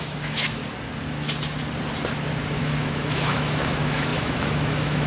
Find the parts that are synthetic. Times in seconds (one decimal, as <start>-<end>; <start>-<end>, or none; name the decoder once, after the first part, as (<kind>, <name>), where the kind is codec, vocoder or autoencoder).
0.0-0.6 (autoencoder, DAC-VAE); 2.6-5.1